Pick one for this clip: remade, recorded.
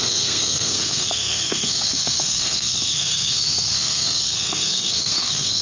remade